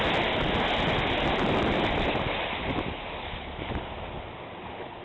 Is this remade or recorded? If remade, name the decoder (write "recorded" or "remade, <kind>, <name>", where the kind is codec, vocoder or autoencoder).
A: recorded